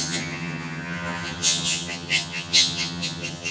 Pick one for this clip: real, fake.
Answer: fake